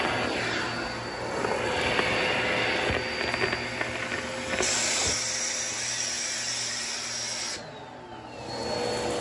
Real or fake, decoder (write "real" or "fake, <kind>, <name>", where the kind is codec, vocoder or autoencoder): real